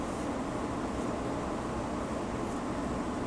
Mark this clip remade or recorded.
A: recorded